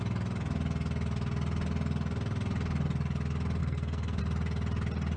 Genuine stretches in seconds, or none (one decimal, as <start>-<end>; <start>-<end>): 0.0-3.6; 4.2-5.2